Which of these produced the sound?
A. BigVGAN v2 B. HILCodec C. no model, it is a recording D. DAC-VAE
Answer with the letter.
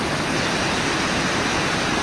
C